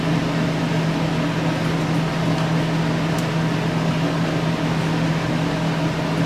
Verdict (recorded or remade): recorded